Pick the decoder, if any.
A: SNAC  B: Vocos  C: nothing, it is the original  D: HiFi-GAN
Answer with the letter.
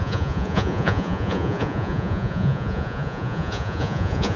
B